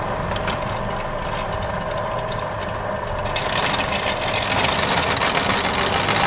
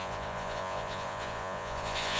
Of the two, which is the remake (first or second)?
second